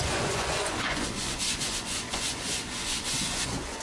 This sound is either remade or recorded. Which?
remade